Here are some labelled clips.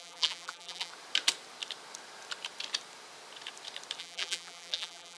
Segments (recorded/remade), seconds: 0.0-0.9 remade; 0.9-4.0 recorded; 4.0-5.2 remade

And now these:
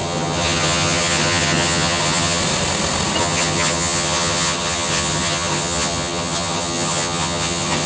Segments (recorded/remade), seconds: 0.0-2.4 remade; 2.4-3.2 recorded; 3.2-7.9 remade

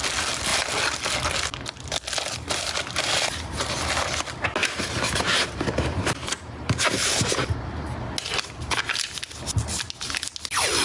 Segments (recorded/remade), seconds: 0.0-4.6 recorded; 4.6-7.4 remade; 7.4-10.8 recorded

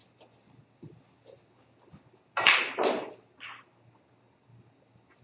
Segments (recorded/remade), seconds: 0.0-5.2 recorded

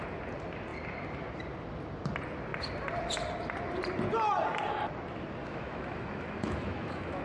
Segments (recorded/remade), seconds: 0.0-5.4 recorded; 5.4-7.2 remade